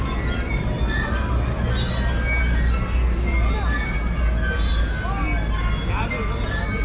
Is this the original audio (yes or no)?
yes